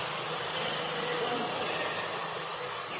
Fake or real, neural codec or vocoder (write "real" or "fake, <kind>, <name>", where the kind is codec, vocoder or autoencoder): real